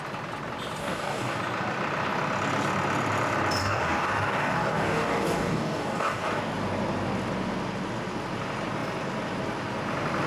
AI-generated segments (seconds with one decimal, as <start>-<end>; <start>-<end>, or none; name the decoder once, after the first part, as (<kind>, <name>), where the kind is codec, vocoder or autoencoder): 0.8-1.4 (codec, DAC); 3.6-6.4